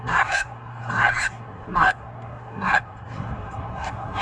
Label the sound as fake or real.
fake